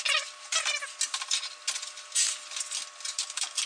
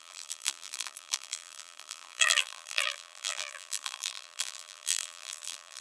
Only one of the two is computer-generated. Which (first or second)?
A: second